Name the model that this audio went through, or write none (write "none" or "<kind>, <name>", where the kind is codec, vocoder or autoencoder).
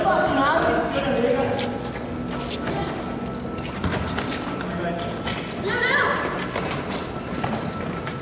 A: none